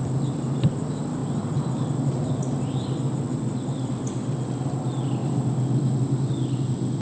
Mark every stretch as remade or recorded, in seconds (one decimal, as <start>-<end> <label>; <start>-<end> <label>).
0.0-7.0 remade